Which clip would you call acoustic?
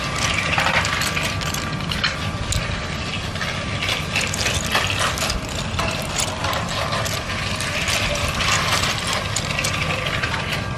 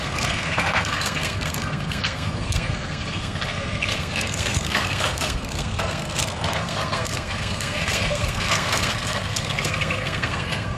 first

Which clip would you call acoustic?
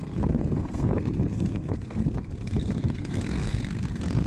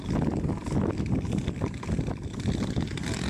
second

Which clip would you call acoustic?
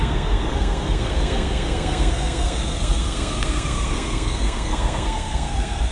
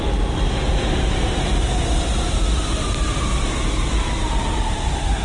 second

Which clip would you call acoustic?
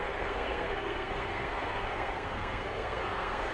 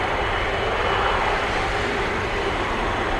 second